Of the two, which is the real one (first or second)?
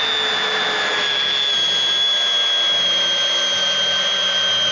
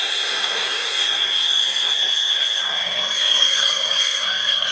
first